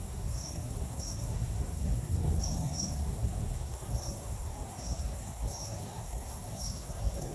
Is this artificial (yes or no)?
yes